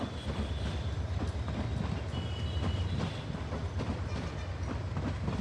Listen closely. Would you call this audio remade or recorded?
recorded